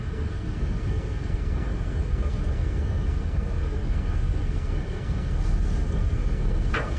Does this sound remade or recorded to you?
remade